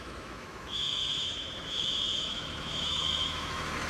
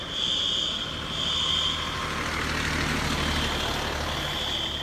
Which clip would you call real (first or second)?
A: second